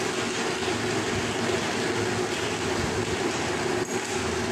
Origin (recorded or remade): recorded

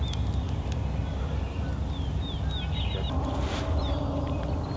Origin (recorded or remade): recorded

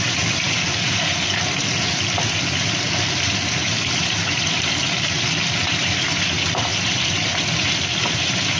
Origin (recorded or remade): recorded